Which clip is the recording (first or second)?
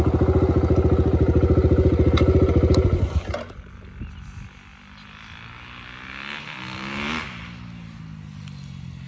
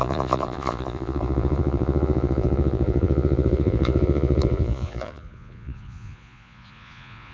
first